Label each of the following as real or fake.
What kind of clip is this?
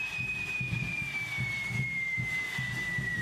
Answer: real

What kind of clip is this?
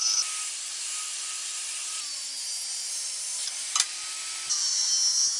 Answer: real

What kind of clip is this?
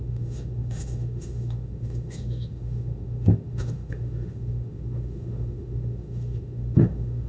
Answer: fake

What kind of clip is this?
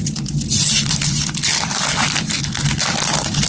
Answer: real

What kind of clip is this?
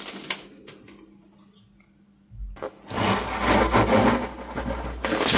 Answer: real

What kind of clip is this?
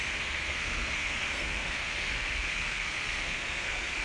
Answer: fake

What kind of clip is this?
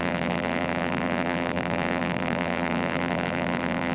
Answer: fake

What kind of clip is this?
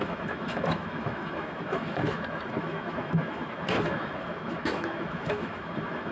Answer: fake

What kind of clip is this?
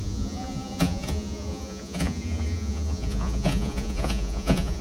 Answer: fake